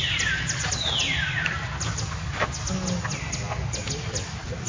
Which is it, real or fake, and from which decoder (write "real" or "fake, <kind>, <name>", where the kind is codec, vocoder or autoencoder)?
real